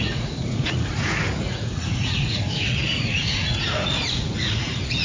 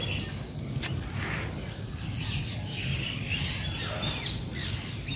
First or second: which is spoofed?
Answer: first